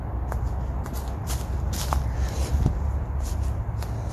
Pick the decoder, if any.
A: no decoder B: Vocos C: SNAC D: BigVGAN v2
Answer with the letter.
A